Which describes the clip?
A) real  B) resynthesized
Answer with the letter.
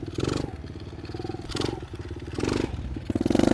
A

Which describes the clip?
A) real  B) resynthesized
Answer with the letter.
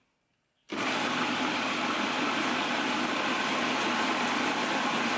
B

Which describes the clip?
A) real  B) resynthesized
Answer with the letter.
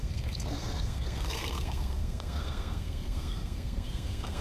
B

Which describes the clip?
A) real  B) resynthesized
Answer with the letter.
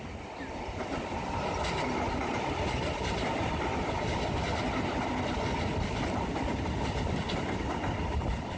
A